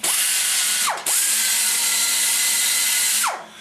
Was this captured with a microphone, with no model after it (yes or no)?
yes